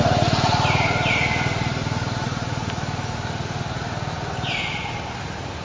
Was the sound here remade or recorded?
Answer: recorded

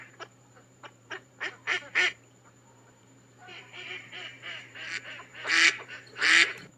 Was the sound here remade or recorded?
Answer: remade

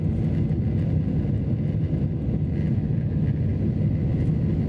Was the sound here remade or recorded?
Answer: recorded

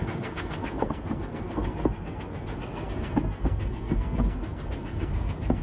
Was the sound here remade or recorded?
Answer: remade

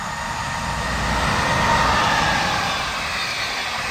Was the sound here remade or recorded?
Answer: recorded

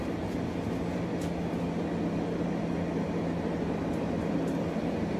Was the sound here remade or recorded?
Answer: recorded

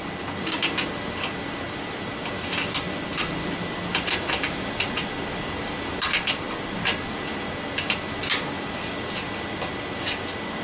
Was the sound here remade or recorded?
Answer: recorded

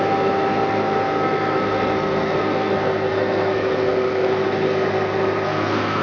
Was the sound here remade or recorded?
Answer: remade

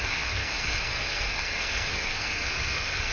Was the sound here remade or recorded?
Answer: remade